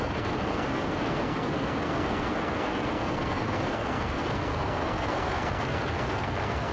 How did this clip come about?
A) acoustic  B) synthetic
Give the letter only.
B